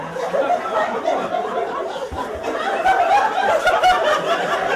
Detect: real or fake real